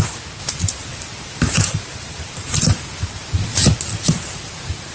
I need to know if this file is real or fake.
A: fake